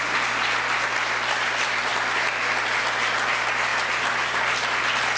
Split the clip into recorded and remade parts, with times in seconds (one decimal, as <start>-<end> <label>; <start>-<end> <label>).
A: 0.0-5.2 recorded